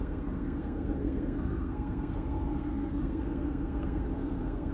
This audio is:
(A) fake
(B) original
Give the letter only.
A